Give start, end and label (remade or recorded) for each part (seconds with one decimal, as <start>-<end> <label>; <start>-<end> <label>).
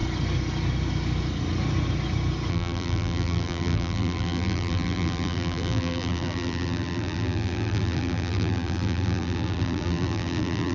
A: 0.0-2.5 recorded; 2.5-10.7 remade